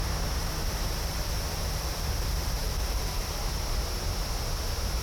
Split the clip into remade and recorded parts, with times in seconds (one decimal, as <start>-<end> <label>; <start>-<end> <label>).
0.0-0.4 recorded; 0.4-3.4 remade; 3.4-5.0 recorded